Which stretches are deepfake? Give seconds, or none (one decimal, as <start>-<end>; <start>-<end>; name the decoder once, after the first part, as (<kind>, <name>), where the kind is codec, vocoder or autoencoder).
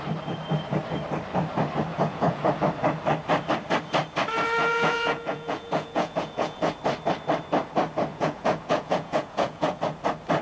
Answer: 1.9-2.5 (vocoder, Vocos); 4.6-6.7; 8.1-9.8